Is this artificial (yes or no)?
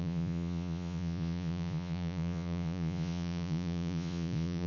yes